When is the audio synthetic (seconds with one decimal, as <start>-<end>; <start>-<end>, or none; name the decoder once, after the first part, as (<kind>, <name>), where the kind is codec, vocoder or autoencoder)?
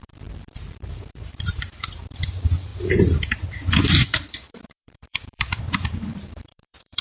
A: 0.0-7.0 (vocoder, BigVGAN v2)